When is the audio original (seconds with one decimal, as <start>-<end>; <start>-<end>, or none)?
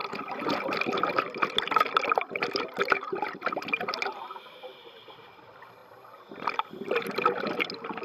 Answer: 0.0-8.0